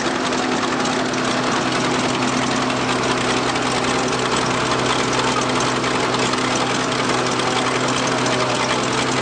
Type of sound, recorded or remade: recorded